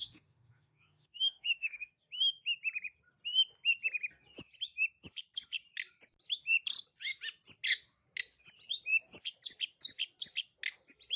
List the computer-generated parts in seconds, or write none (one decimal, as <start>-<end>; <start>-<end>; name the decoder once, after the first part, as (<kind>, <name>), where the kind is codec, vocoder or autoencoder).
0.0-1.9 (autoencoder, DAC-VAE)